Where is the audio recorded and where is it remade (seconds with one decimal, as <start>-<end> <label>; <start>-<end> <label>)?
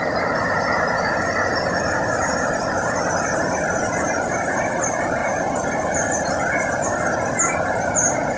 0.0-8.4 recorded